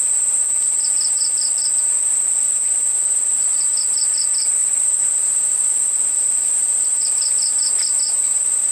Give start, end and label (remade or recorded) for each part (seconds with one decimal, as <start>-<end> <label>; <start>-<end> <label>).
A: 0.0-4.6 recorded; 4.6-8.7 remade